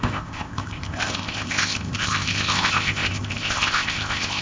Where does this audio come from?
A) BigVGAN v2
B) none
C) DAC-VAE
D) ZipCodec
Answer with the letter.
D